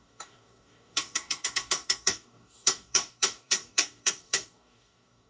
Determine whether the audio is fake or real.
fake